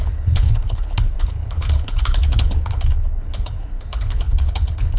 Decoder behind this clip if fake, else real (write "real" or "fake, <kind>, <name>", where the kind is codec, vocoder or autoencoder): fake, codec, HILCodec